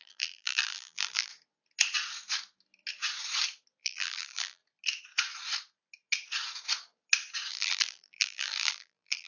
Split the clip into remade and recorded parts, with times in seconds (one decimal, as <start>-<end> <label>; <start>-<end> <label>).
0.0-1.3 remade; 1.3-3.8 recorded; 3.8-4.6 remade; 4.6-7.5 recorded; 7.5-9.3 remade